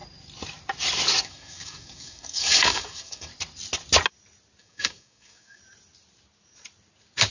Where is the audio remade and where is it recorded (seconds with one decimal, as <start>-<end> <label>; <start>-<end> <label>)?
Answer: 0.0-1.2 recorded; 1.2-3.3 remade; 3.3-4.6 recorded; 4.6-5.6 remade; 5.6-7.3 recorded